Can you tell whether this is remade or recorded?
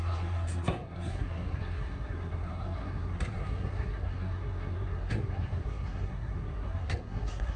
remade